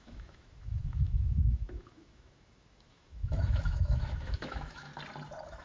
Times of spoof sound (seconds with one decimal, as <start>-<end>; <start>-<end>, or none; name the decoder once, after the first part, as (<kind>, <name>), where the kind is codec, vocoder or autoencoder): 0.0-4.9 (autoencoder, DAC-VAE)